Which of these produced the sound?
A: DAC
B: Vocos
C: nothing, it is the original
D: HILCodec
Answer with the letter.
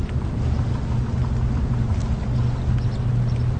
C